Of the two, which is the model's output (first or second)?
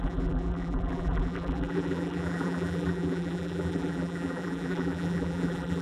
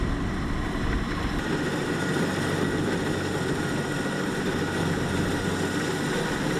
first